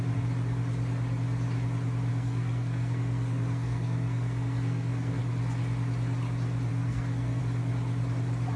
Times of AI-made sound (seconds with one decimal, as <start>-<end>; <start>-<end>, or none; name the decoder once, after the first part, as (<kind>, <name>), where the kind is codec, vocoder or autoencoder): 2.1-5.2 (codec, SNAC); 6.7-7.4